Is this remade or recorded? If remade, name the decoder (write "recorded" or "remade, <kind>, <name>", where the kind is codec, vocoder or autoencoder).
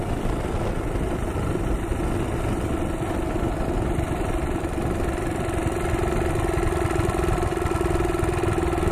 recorded